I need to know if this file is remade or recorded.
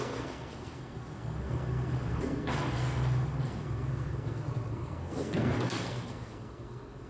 remade